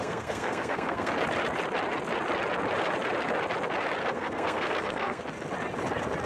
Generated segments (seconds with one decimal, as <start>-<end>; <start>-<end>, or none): 0.0-1.1; 4.0-5.2